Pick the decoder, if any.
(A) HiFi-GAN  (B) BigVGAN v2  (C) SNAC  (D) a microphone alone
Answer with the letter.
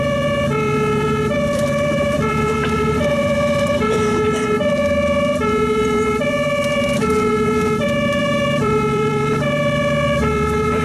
B